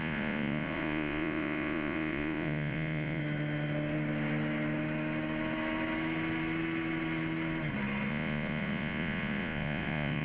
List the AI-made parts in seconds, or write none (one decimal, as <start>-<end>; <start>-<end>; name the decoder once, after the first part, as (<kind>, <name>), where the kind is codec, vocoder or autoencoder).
0.0-3.2 (vocoder, Vocos); 8.1-10.2